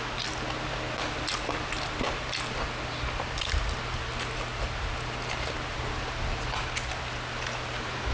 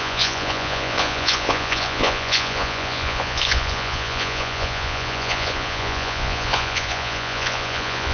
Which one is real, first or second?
first